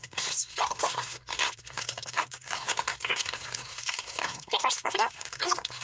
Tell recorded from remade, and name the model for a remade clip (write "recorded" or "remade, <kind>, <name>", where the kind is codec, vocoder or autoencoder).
remade, codec, SNAC